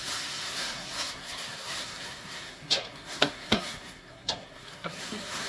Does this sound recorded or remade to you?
remade